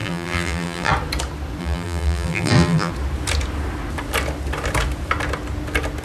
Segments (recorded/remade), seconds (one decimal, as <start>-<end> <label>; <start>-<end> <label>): 0.0-0.9 remade; 0.9-1.6 recorded; 1.6-2.9 remade; 2.9-6.0 recorded